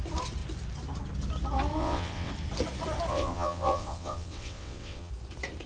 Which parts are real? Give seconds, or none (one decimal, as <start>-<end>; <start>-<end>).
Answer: 0.0-1.8; 2.3-3.1; 5.1-5.7